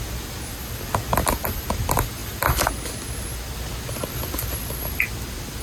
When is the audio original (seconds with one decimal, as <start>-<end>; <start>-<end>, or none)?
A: 0.0-5.6